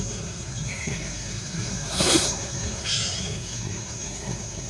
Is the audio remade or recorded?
remade